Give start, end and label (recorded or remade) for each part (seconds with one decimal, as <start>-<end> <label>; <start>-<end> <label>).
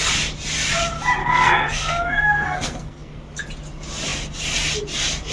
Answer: 0.0-1.2 recorded; 1.2-3.2 remade; 3.2-5.3 recorded